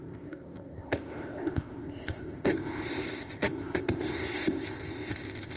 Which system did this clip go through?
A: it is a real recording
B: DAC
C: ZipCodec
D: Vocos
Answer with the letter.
C